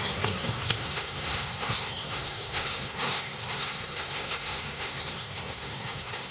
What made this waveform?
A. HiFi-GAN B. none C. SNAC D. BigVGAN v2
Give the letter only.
C